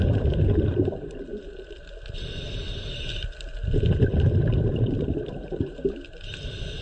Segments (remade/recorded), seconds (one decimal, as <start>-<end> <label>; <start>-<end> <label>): 0.0-1.3 remade; 1.3-4.7 recorded; 4.7-6.8 remade